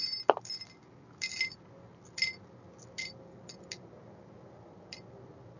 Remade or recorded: recorded